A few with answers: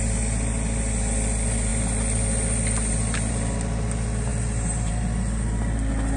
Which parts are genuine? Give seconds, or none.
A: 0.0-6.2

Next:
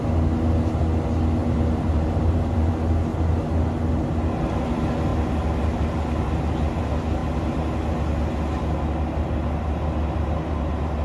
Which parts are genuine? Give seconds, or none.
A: 0.0-1.4; 2.7-11.0